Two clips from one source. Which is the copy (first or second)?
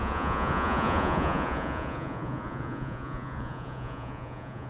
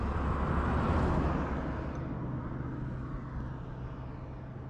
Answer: first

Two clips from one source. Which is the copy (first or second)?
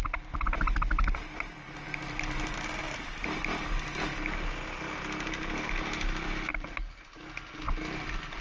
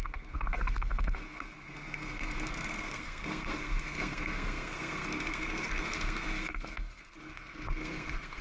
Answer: second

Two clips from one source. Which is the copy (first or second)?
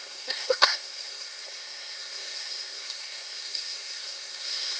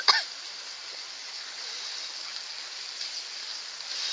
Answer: first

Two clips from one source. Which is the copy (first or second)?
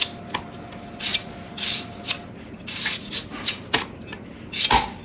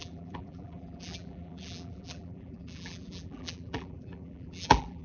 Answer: second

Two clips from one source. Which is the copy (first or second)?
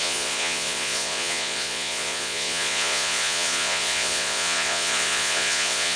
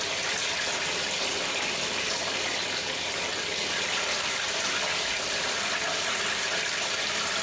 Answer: first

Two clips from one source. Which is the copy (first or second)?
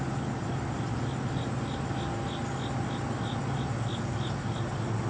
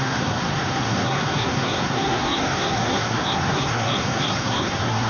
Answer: second